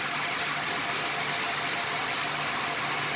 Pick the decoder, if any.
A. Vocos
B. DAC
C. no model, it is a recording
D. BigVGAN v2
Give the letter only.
C